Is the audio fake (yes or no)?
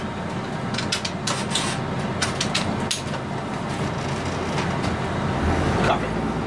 no